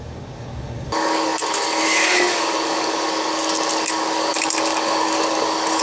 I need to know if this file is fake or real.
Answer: fake